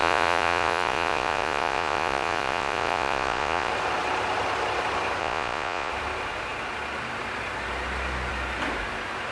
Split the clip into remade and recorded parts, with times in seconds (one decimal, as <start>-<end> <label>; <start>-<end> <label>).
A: 0.0-3.7 remade; 3.7-5.2 recorded; 5.2-5.9 remade; 5.9-9.3 recorded